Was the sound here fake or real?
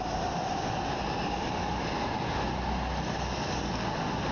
real